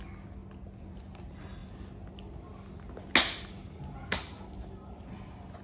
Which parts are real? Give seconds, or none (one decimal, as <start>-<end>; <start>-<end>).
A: 0.0-5.6